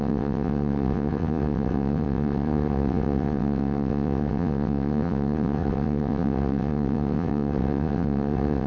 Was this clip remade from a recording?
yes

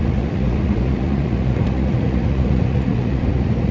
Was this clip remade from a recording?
yes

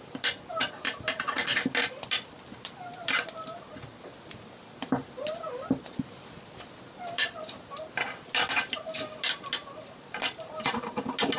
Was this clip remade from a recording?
no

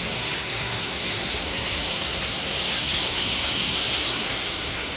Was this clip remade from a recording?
yes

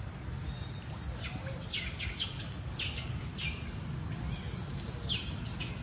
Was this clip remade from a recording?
no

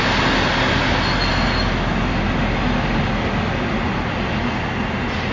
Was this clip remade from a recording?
no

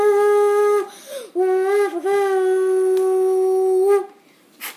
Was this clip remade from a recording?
no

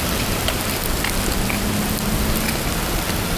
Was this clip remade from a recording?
no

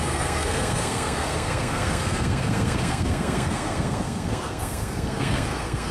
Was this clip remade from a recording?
yes